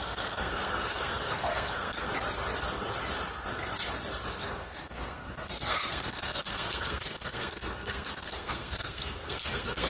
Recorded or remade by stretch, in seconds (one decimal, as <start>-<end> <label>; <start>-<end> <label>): 0.0-2.1 remade; 2.1-4.4 recorded; 4.4-9.9 remade